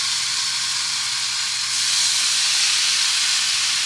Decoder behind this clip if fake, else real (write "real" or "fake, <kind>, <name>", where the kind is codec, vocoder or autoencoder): real